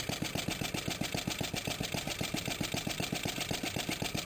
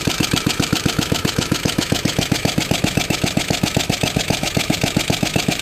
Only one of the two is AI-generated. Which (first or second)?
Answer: second